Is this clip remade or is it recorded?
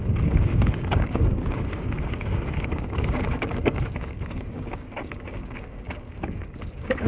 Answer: remade